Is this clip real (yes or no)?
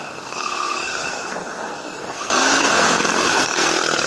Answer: no